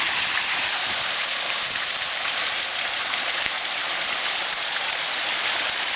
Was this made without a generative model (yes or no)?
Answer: no